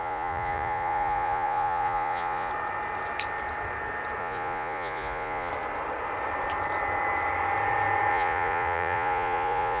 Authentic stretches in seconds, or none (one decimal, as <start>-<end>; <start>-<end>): 2.5-4.2; 5.5-8.1